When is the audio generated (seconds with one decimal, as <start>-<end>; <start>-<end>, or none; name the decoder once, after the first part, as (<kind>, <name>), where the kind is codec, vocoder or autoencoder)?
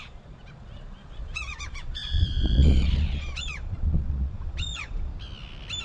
0.0-5.1 (vocoder, Vocos)